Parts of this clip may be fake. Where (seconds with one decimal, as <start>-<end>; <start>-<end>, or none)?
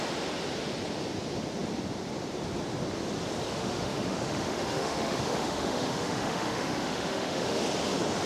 3.5-7.6